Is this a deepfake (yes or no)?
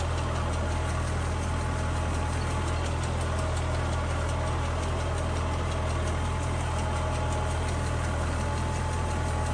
no